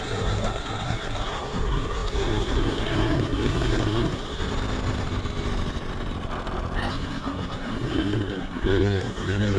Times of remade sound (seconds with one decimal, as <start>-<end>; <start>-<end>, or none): 0.0-4.5; 6.9-9.6